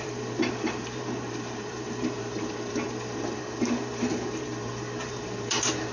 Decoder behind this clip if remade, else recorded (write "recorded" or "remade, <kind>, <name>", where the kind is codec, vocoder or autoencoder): remade, vocoder, BigVGAN v2